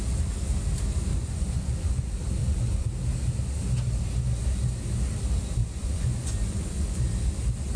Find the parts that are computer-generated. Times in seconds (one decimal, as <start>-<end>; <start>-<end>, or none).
1.1-2.0; 2.4-2.9; 5.6-7.0